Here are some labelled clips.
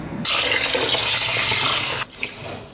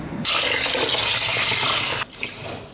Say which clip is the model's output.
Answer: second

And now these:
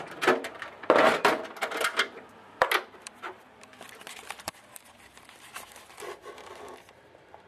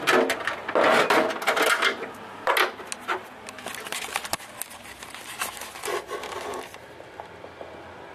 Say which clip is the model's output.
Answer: first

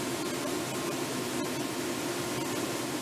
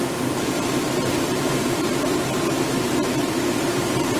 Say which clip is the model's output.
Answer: second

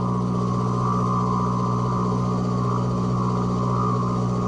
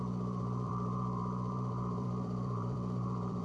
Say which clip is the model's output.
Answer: second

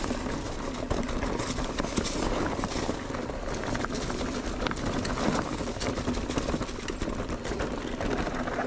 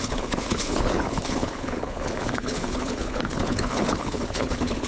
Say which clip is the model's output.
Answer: second